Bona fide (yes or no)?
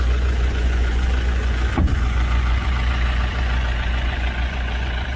no